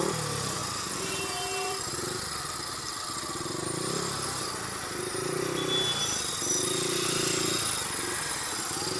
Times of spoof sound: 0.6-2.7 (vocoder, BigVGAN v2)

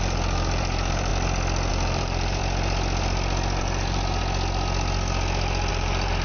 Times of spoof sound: 0.0-1.1 (vocoder, BigVGAN v2); 1.7-2.4; 3.6-4.2; 5.7-6.2

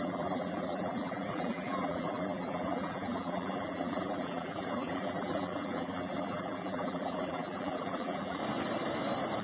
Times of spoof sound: 0.0-8.4 (vocoder, BigVGAN v2)

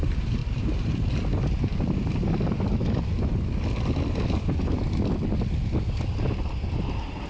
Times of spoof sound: 0.0-2.8 (vocoder, BigVGAN v2); 6.7-7.3